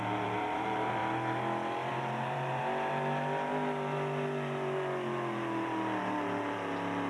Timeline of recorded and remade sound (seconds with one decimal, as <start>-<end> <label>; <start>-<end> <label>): 0.0-1.0 remade; 1.0-1.9 recorded; 1.9-2.6 remade; 2.6-7.1 recorded